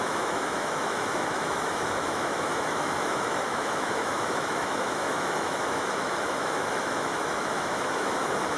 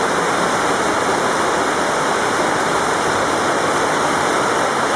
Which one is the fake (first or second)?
first